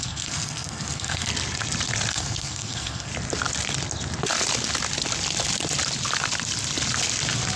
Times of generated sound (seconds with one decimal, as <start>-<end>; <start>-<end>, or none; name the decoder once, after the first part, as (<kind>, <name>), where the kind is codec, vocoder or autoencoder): 0.0-1.3 (codec, SNAC); 2.1-3.1